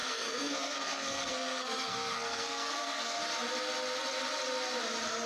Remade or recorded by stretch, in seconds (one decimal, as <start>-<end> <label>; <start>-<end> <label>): 0.0-3.2 remade; 3.2-5.3 recorded

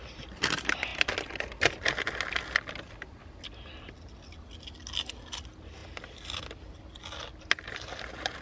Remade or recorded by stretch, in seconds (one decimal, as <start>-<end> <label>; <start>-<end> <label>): 0.0-8.4 recorded

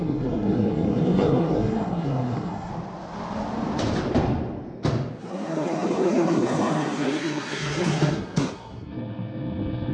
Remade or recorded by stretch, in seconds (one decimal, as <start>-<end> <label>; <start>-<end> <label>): 0.0-2.7 remade; 2.7-5.2 recorded; 5.2-9.9 remade

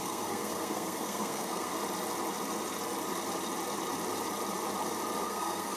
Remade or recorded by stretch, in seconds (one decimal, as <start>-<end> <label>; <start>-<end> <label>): 0.0-1.7 remade; 1.7-5.2 recorded; 5.2-5.8 remade